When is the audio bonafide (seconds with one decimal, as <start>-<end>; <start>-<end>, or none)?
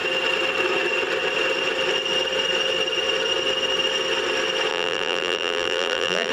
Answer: 0.0-4.7